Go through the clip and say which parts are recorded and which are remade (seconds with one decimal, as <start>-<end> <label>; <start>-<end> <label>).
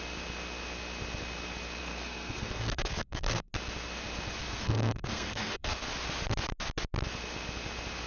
0.0-1.8 recorded; 1.8-3.5 remade; 3.5-4.4 recorded; 4.4-5.8 remade; 5.8-8.1 recorded